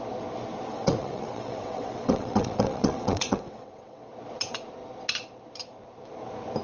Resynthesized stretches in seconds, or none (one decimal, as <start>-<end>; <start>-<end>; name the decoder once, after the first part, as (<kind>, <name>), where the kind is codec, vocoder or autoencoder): 0.7-4.1 (vocoder, WaveNeXt)